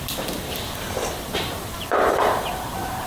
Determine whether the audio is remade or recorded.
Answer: remade